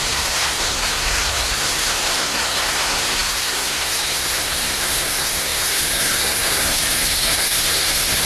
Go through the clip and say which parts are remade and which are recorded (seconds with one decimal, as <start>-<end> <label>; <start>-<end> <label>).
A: 0.0-8.3 remade